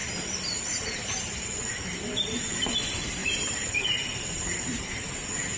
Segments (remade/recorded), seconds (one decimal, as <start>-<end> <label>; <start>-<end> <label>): 0.0-2.0 remade; 2.0-3.2 recorded; 3.2-5.1 remade; 5.1-5.6 recorded